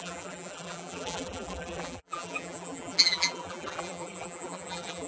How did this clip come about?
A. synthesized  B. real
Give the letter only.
A